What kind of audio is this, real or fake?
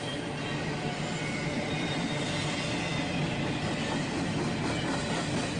real